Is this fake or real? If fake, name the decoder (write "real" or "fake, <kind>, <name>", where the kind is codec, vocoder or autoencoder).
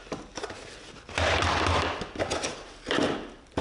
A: real